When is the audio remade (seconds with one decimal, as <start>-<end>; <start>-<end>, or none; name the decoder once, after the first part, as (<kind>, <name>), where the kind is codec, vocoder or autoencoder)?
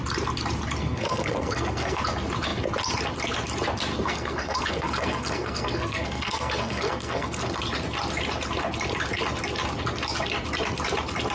0.8-2.0 (codec, SNAC); 3.9-7.6